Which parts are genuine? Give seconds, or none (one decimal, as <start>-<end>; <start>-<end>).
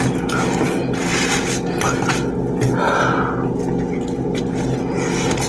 0.0-5.5